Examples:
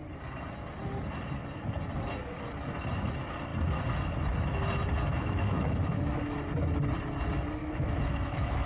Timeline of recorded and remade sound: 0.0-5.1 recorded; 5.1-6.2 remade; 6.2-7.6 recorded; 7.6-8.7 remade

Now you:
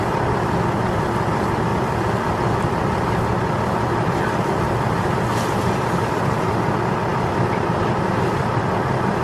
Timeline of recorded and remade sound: 0.0-9.2 recorded

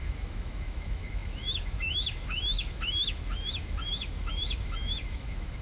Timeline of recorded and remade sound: 0.0-5.6 remade

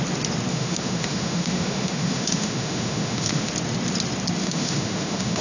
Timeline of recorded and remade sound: 0.0-0.5 recorded; 0.5-3.5 remade; 3.5-4.4 recorded; 4.4-5.4 remade